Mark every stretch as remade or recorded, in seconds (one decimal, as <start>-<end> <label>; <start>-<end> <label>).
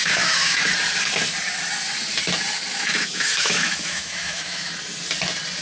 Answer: 0.0-0.7 remade; 0.7-2.7 recorded; 2.7-4.7 remade; 4.7-5.6 recorded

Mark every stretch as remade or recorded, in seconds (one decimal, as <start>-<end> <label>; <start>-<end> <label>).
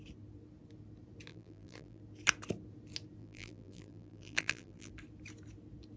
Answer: 0.0-1.3 recorded; 1.3-2.0 remade; 2.0-3.2 recorded; 3.2-4.9 remade; 4.9-6.0 recorded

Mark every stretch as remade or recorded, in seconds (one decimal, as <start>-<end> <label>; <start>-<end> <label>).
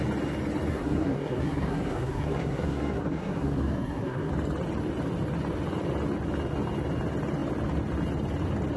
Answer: 0.0-0.7 recorded; 0.7-4.3 remade; 4.3-8.8 recorded